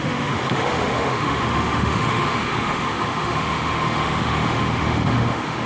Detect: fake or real fake